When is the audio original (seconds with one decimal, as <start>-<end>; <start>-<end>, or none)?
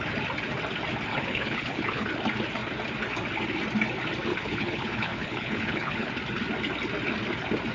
0.0-1.1; 2.1-4.3; 6.1-7.7